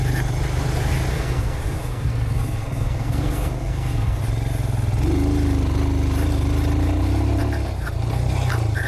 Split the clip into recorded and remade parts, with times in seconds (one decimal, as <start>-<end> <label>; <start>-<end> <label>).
0.0-1.1 recorded; 1.1-4.2 remade; 4.2-8.9 recorded